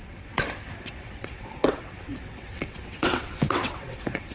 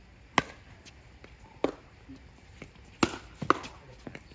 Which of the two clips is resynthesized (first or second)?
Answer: first